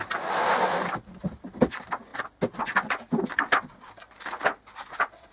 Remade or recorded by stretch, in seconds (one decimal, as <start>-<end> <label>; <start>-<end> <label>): 0.0-5.3 recorded